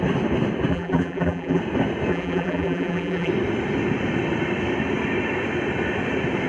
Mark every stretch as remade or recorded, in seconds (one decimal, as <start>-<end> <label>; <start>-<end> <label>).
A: 0.0-0.7 recorded; 0.7-1.6 remade; 1.6-2.1 recorded; 2.1-3.3 remade; 3.3-6.5 recorded